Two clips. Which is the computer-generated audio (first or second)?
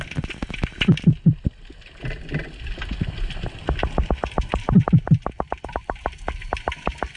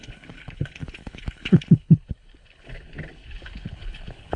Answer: second